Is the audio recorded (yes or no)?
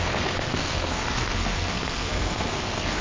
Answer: no